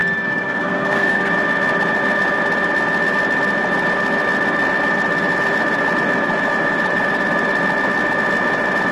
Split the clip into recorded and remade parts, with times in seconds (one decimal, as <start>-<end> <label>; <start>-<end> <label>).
0.0-1.3 remade; 1.3-8.9 recorded